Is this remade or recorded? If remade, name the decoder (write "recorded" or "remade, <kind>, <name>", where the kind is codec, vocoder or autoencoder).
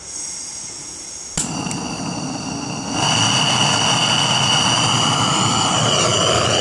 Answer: recorded